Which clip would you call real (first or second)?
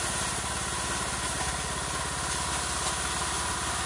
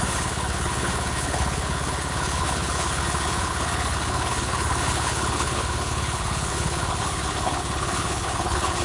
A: first